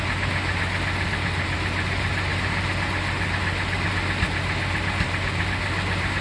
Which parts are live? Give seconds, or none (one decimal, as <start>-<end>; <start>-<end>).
0.0-6.2